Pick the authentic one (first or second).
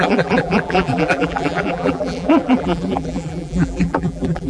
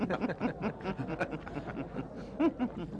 second